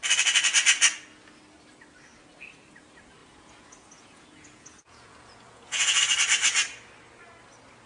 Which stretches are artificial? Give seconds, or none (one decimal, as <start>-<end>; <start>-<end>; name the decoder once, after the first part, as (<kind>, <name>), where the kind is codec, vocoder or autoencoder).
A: 3.2-6.0 (vocoder, Vocos)